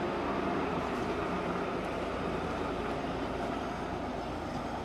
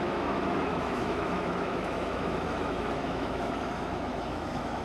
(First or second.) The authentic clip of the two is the first